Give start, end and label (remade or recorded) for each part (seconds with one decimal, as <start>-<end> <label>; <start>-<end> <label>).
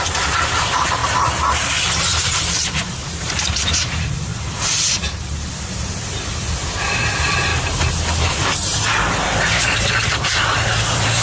0.0-1.0 remade; 1.0-2.5 recorded; 2.5-4.3 remade; 4.3-5.2 recorded; 5.2-7.5 remade; 7.5-9.4 recorded; 9.4-11.2 remade